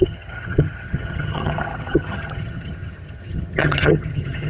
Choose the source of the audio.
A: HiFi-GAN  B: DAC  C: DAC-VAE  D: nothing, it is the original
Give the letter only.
A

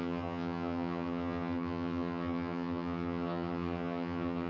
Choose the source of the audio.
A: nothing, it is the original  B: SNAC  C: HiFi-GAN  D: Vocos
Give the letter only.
C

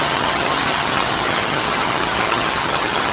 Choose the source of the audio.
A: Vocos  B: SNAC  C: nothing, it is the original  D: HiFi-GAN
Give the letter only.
D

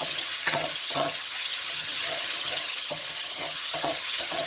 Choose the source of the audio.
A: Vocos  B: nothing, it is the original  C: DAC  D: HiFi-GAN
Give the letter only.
D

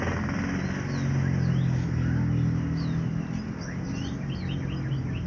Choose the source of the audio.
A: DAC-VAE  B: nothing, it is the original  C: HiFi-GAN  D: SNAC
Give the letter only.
B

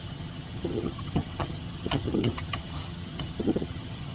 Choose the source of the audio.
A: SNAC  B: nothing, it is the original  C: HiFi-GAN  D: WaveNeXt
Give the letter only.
C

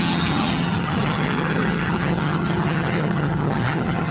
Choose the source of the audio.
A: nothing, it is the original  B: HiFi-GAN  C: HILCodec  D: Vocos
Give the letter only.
B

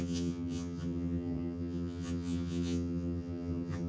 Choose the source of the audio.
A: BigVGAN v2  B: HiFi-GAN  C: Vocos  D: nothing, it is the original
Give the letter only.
B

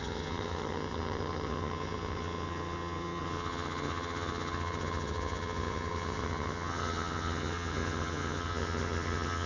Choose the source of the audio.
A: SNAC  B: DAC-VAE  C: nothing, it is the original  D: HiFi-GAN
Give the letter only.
D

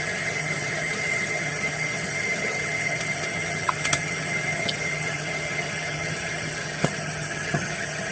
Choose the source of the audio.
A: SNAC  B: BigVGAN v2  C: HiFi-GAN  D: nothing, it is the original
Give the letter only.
C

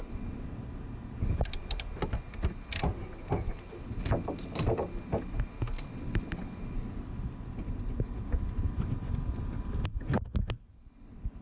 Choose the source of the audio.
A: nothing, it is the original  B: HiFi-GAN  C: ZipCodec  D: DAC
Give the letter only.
A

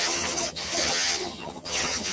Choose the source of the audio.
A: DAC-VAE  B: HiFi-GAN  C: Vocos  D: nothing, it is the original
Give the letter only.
B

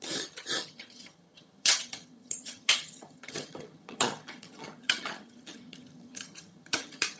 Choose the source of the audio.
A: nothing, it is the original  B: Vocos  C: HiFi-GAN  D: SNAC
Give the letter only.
C